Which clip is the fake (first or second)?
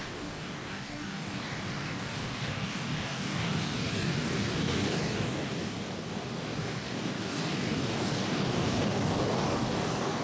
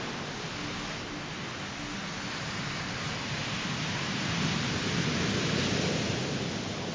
first